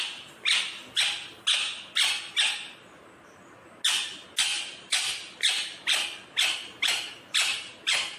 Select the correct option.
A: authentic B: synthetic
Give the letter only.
A